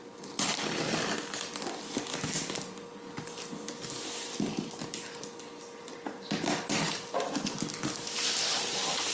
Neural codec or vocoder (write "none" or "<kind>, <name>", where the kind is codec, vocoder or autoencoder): none